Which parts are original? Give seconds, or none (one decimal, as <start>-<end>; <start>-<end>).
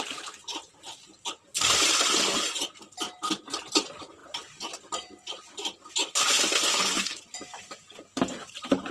0.0-6.7; 7.2-8.9